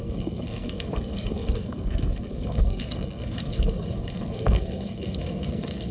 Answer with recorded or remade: remade